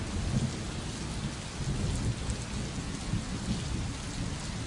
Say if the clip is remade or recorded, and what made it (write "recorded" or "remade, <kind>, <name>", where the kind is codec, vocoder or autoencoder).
recorded